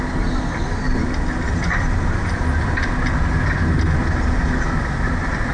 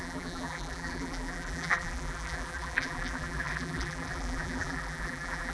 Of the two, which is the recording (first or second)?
first